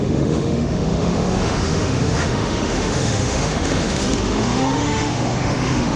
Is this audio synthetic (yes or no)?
yes